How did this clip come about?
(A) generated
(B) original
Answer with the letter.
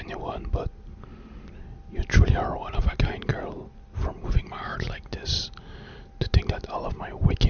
B